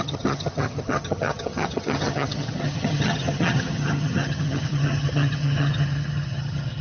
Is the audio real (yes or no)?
no